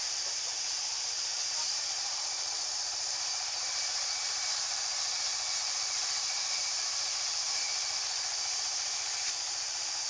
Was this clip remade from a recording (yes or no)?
yes